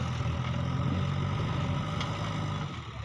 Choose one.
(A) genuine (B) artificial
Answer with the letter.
A